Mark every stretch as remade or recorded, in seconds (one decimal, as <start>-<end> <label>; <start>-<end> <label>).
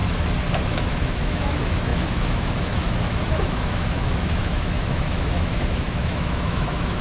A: 0.0-0.6 recorded; 0.6-7.0 remade